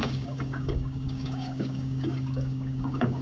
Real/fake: fake